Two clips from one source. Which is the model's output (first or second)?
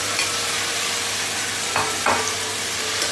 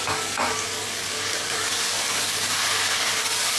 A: second